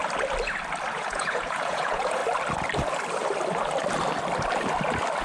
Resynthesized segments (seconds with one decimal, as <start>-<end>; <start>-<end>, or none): 0.9-2.2